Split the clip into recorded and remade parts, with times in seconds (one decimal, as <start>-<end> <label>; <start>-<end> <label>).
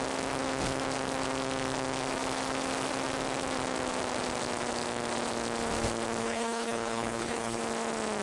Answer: 0.0-6.2 recorded; 6.2-7.6 remade; 7.6-8.2 recorded